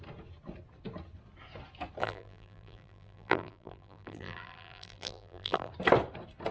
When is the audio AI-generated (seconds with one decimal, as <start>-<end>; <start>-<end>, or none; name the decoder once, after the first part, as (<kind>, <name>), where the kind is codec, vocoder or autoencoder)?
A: 2.0-5.7 (vocoder, BigVGAN v2)